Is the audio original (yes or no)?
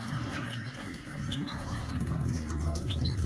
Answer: no